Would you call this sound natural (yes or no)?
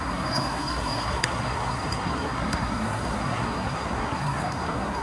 no